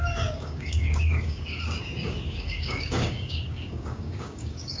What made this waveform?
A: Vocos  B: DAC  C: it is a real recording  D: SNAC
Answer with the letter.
B